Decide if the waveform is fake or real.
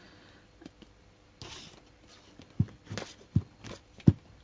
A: real